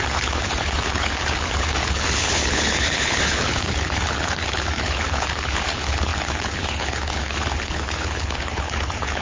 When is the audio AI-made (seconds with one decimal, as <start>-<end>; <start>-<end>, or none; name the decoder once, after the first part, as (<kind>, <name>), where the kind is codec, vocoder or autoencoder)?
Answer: 0.0-9.2 (codec, HILCodec)